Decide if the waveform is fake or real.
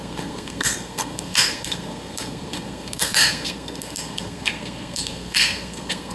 fake